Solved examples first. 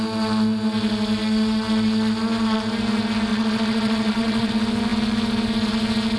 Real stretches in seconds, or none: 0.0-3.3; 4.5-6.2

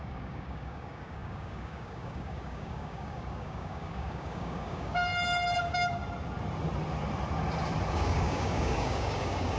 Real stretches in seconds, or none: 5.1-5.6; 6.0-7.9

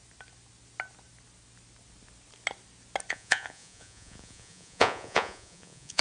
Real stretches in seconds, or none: 0.0-3.1

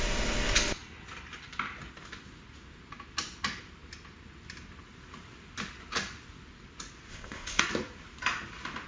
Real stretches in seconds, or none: 0.0-7.1; 7.6-8.9

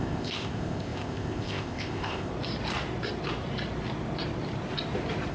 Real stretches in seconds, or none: 2.3-5.3

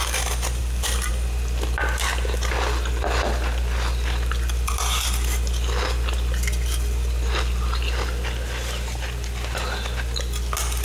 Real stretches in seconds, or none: 0.0-0.6; 1.1-10.8

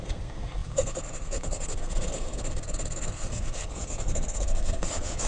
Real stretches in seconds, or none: none

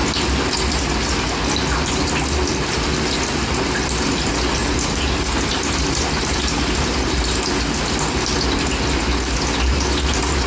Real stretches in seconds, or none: 0.0-10.5